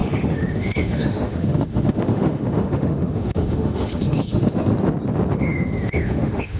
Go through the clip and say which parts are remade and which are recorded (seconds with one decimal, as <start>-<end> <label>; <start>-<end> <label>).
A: 0.0-4.7 remade; 4.7-5.3 recorded; 5.3-6.6 remade